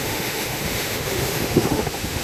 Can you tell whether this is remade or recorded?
remade